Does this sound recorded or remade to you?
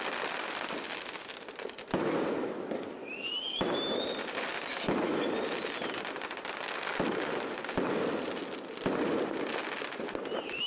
recorded